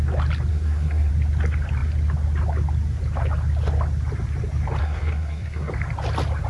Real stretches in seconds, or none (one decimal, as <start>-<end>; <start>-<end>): 0.0-0.5; 1.1-4.8; 5.7-6.5